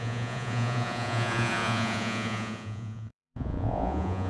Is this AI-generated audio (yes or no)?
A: yes